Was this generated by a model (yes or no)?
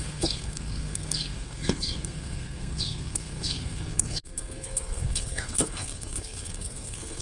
yes